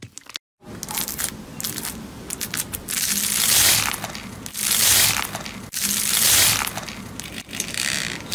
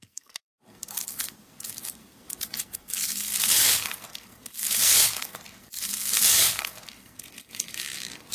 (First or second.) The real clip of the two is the first